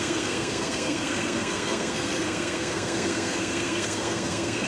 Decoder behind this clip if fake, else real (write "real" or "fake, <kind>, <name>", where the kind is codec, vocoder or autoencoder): fake, codec, SNAC